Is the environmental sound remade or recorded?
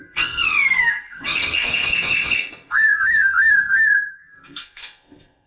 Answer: remade